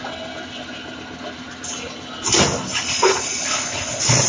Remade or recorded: recorded